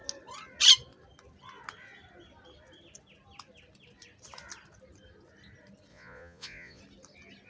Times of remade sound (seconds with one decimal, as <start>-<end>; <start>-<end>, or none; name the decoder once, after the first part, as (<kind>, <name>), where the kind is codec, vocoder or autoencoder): 5.9-6.8 (vocoder, Vocos)